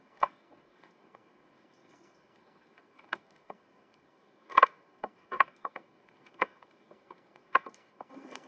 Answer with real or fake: fake